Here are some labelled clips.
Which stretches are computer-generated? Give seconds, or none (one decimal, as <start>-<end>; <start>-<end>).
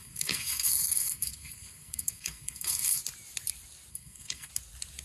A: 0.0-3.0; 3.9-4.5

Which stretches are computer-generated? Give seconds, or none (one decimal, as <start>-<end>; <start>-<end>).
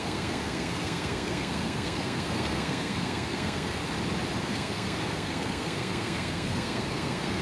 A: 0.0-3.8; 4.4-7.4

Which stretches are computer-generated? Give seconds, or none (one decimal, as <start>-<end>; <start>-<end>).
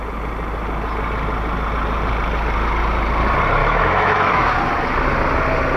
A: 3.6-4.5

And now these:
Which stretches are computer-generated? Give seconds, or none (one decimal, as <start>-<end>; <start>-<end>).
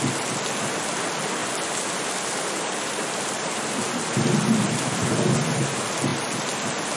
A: 1.4-5.1